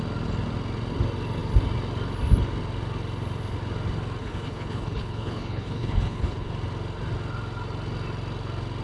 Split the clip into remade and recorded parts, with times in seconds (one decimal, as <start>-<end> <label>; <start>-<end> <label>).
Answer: 0.0-4.2 recorded; 4.2-6.5 remade; 6.5-8.8 recorded